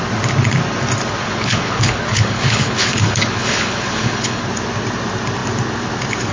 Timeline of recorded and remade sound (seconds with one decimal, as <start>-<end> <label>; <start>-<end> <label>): 0.0-1.2 recorded; 1.2-4.5 remade; 4.5-6.3 recorded